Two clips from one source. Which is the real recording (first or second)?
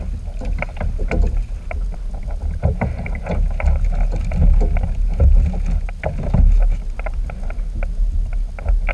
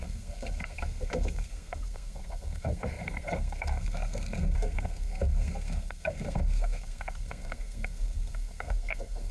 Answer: first